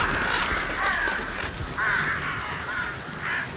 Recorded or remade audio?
recorded